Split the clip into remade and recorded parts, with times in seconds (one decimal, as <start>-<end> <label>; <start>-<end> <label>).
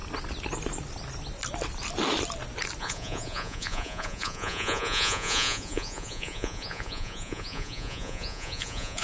0.0-2.8 recorded; 2.8-9.0 remade